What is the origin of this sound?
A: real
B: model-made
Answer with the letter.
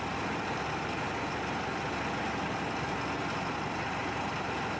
A